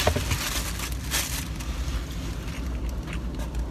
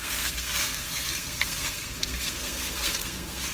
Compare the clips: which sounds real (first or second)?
first